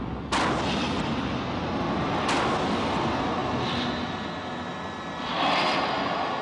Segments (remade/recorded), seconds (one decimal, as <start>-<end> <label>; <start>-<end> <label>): 0.0-6.4 recorded